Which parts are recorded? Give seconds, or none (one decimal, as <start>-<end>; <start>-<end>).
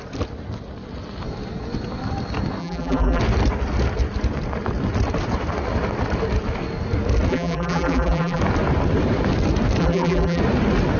0.0-2.6; 3.2-7.3; 8.4-9.8; 10.4-11.0